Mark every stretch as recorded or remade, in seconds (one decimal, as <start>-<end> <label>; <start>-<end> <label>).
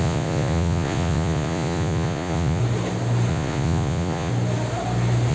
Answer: 0.0-2.6 remade; 2.6-3.3 recorded; 3.3-4.3 remade; 4.3-5.3 recorded